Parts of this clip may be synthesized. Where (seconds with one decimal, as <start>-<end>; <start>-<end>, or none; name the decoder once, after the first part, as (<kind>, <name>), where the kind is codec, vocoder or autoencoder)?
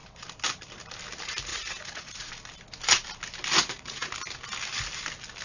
1.5-2.3 (vocoder, Vocos); 3.5-4.1